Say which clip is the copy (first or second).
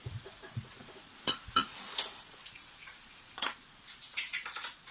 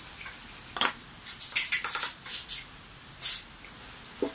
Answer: first